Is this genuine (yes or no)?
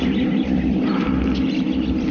yes